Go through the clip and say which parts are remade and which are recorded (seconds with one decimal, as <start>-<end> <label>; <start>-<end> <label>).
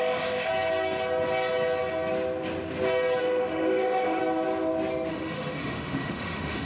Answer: 0.0-0.5 remade; 0.5-3.2 recorded; 3.2-4.2 remade; 4.2-5.1 recorded; 5.1-6.7 remade